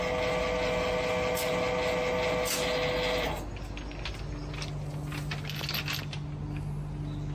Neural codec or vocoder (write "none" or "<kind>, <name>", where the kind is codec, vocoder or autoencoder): none